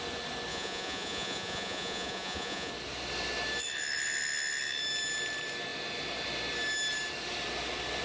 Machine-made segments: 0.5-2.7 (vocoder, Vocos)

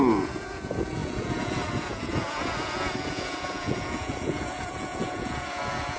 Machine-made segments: 0.0-6.0 (vocoder, Vocos)

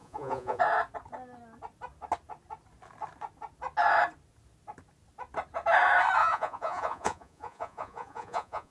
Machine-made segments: 0.0-0.6 (vocoder, Vocos); 6.2-8.7

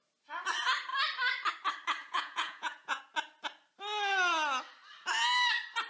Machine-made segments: 2.0-3.0 (vocoder, Vocos)

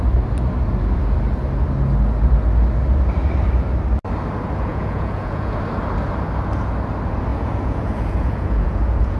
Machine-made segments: 4.7-5.6 (vocoder, Vocos); 7.3-9.2

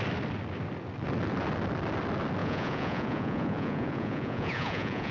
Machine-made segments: 2.4-5.1 (vocoder, Vocos)

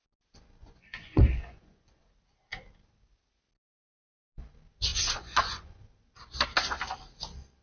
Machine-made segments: 0.6-2.0 (vocoder, Vocos); 4.9-5.8

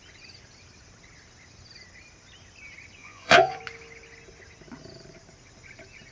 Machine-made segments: 3.0-3.6 (vocoder, Vocos)